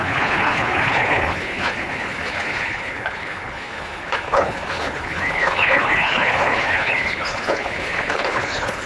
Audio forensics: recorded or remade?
remade